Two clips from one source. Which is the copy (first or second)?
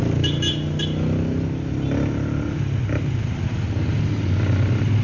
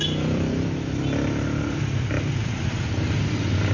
second